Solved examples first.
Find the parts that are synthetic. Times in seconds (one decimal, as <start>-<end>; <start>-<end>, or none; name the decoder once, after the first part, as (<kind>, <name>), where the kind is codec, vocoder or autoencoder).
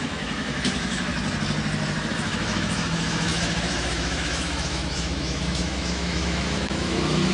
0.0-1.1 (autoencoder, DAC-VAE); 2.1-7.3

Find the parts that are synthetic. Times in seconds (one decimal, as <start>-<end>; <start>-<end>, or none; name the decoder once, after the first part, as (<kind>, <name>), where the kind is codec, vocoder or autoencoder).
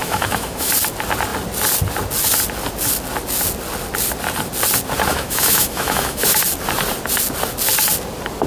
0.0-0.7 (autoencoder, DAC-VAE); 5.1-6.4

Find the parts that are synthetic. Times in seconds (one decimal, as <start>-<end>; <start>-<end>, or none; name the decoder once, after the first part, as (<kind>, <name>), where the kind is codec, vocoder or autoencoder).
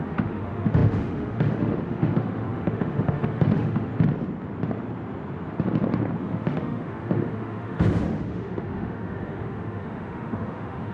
0.0-3.9 (autoencoder, DAC-VAE); 6.2-10.9